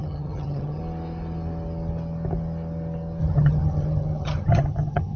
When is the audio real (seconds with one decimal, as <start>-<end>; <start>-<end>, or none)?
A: 0.8-3.2